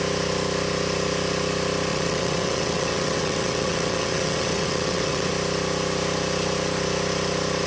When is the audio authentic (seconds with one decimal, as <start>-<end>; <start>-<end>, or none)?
0.0-1.9; 5.3-7.7